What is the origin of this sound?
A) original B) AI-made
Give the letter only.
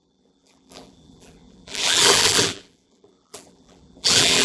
B